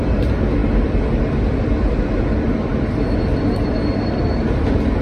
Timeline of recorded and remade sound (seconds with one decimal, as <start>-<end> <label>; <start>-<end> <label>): 0.0-0.6 recorded; 0.6-1.9 remade; 1.9-5.0 recorded